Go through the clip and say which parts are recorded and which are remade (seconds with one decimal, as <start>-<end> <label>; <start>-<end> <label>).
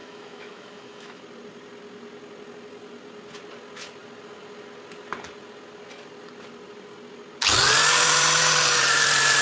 0.0-1.2 remade; 1.2-9.4 recorded